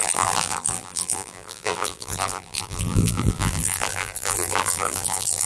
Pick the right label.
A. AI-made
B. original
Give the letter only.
A